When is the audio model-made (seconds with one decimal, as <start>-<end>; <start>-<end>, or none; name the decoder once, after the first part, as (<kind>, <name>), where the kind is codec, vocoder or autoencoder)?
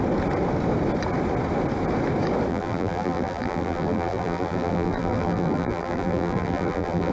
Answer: 2.5-7.1 (vocoder, BigVGAN v2)